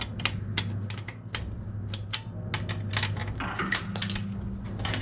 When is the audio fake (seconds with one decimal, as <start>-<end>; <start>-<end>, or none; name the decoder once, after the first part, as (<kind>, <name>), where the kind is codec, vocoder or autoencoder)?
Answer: none